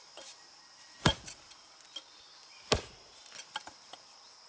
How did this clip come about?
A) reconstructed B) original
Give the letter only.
B